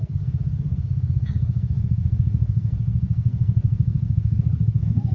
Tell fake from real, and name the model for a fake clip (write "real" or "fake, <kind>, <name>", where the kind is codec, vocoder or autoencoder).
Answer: fake, codec, SNAC